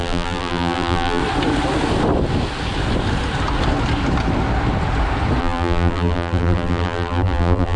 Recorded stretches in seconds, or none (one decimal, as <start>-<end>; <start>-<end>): 1.2-5.4